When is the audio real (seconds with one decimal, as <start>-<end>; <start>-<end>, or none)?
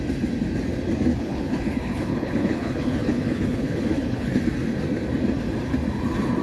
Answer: 0.0-1.1; 4.4-6.4